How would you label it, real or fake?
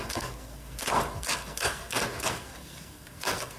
fake